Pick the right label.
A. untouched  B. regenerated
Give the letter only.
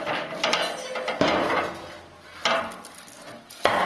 A